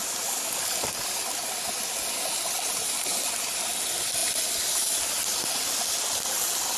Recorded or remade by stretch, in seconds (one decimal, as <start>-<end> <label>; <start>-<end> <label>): 0.0-6.8 recorded